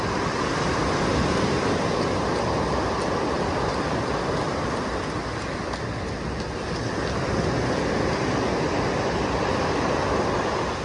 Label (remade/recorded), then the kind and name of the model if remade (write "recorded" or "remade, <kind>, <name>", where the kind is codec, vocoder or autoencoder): recorded